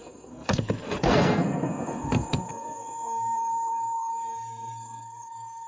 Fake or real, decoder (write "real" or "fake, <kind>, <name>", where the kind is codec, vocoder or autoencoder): fake, codec, SNAC